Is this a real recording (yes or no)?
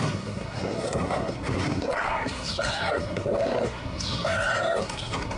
no